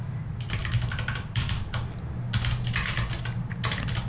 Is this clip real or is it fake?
real